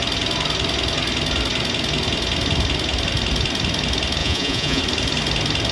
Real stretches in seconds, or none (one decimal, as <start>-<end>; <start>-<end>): 0.0-4.2; 4.8-5.7